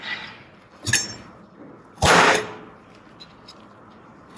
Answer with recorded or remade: recorded